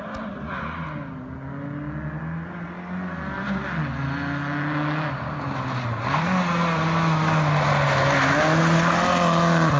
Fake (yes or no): no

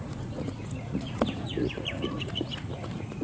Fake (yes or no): yes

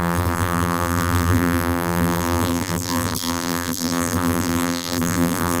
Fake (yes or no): yes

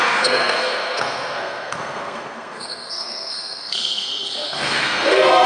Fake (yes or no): yes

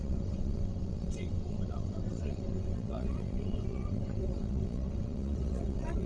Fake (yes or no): yes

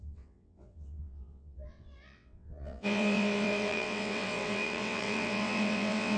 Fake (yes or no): yes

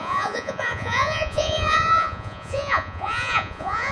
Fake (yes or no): yes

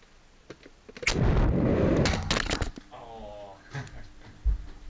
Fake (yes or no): no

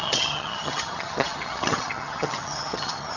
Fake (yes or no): yes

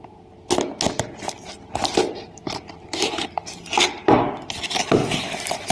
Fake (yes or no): no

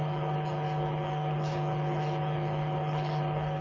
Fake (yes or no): yes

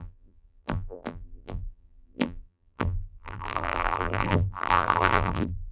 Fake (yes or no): yes